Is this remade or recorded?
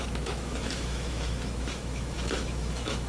remade